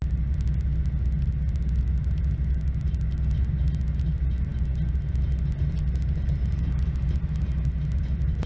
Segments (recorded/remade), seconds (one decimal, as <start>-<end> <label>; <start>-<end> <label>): 0.0-8.5 recorded

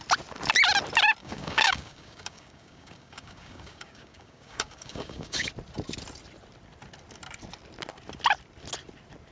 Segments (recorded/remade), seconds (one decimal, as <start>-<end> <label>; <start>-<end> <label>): 0.0-1.2 recorded; 1.2-5.5 remade; 5.5-9.3 recorded

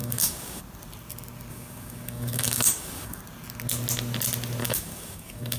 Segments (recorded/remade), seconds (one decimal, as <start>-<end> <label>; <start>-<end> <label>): 0.0-0.6 remade; 0.6-1.5 recorded; 1.5-3.2 remade; 3.2-4.6 recorded; 4.6-5.6 remade

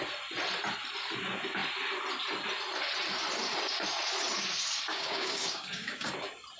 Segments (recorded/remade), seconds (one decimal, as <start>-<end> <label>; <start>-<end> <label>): 0.0-4.9 recorded; 4.9-6.1 remade; 6.1-6.6 recorded